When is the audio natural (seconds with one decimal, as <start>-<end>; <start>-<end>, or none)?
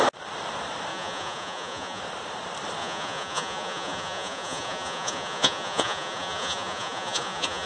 0.0-0.9; 2.0-2.8